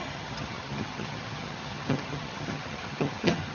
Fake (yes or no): yes